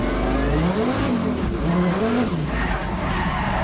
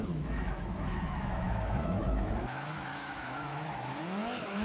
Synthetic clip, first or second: second